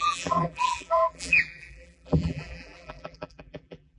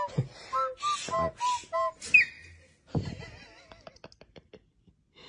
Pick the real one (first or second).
second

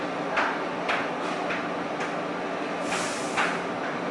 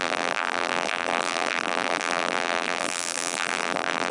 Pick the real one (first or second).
first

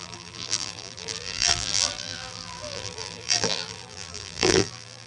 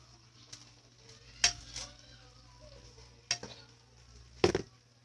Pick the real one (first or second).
second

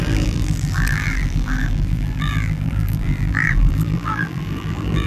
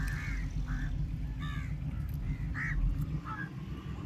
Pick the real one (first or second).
second